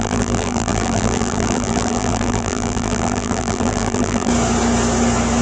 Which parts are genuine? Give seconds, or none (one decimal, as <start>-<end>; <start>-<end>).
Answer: 4.3-5.4